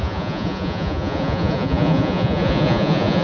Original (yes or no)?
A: no